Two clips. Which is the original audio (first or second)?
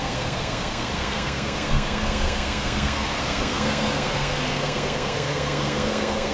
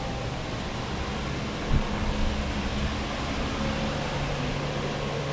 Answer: second